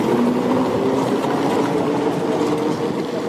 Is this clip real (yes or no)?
yes